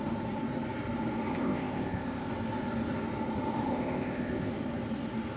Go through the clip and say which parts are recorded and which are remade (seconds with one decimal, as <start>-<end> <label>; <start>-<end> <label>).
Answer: 0.0-1.3 recorded; 1.3-2.3 remade; 2.3-3.6 recorded; 3.6-4.5 remade; 4.5-5.4 recorded